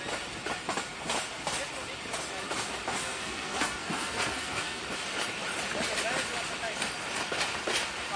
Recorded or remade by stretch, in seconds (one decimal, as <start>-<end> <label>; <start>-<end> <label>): 0.0-3.0 recorded; 3.0-4.8 remade; 4.8-8.2 recorded